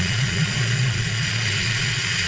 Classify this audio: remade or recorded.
remade